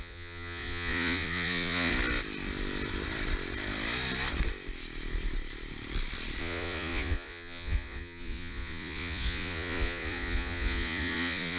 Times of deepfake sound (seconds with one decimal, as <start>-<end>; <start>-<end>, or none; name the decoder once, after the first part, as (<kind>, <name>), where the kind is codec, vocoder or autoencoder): 0.0-1.9 (vocoder, Vocos); 6.4-11.6